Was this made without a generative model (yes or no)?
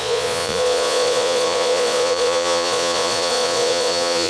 no